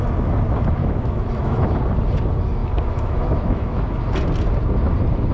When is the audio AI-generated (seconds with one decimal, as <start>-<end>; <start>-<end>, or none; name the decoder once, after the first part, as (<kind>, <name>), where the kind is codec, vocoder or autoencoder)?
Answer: 0.8-1.8 (autoencoder, DAC-VAE); 2.6-4.0

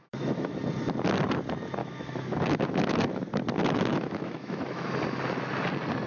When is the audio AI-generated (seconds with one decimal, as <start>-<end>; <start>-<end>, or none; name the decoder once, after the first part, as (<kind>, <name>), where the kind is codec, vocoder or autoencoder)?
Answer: 0.0-0.6 (autoencoder, DAC-VAE); 1.8-3.2; 3.9-4.9